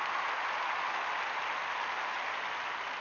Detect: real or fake real